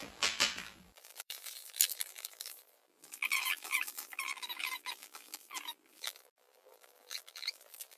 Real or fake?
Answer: fake